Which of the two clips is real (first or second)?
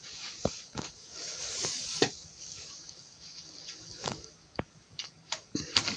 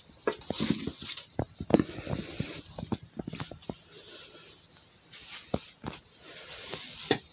second